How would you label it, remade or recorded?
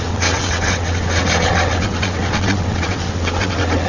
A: remade